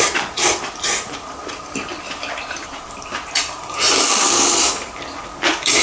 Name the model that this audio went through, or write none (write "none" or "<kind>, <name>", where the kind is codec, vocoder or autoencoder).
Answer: vocoder, BigVGAN v2